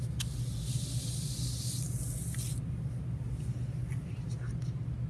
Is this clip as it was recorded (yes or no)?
yes